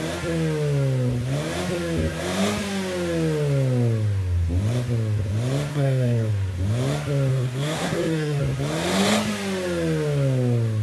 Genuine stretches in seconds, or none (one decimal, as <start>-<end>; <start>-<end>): 0.0-5.7; 6.3-7.3; 8.4-10.8